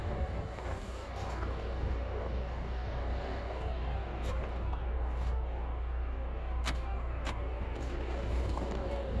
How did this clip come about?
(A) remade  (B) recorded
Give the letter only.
A